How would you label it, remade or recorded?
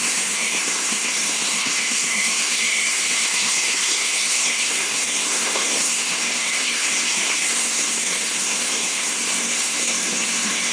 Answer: remade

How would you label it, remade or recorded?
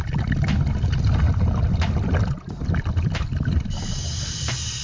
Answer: recorded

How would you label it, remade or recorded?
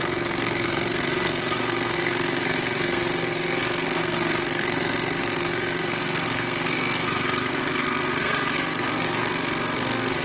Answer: remade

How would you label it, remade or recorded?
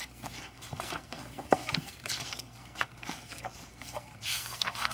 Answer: remade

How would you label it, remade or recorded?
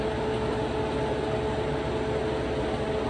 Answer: recorded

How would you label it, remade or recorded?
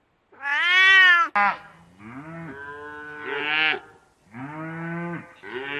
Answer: recorded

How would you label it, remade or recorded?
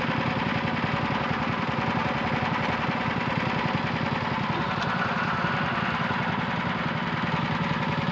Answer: recorded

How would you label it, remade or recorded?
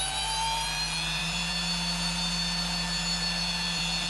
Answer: remade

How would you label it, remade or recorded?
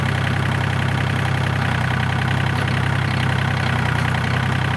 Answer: recorded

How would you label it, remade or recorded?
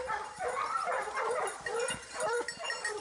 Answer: recorded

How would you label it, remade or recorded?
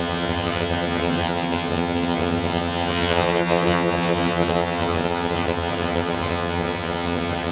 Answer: remade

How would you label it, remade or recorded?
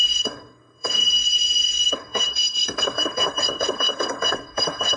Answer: remade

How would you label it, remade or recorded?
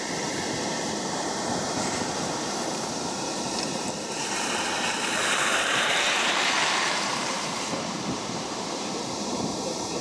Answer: remade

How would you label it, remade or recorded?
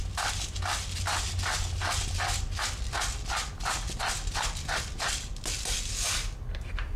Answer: recorded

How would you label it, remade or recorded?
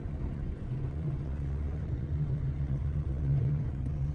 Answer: remade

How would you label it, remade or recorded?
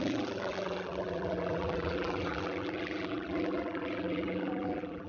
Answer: remade